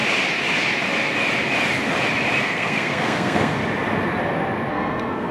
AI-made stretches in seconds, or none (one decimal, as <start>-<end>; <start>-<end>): 2.4-3.6; 4.7-5.3